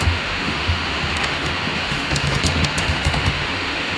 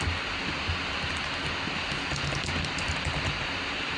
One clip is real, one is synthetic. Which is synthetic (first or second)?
first